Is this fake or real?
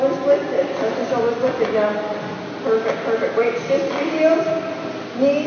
real